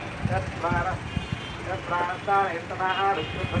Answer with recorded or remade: recorded